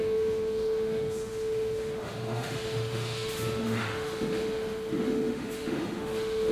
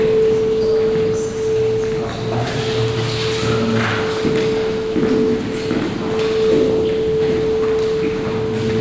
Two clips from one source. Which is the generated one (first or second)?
first